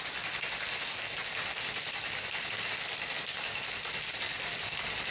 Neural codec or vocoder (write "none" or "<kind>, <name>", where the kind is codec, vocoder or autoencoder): none